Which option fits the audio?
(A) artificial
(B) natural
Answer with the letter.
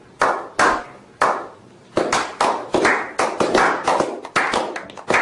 B